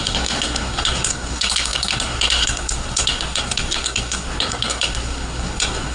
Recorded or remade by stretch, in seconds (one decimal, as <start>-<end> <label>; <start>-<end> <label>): 0.0-5.9 remade